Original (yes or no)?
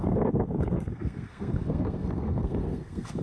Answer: no